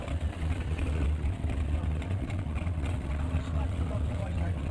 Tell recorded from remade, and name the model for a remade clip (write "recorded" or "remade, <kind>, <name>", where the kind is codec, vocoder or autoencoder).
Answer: remade, vocoder, WaveNeXt